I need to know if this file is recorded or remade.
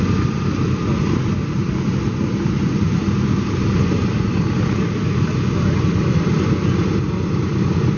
recorded